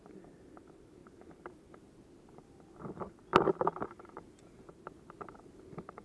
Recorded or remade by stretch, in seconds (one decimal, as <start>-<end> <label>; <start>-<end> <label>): 0.0-6.0 recorded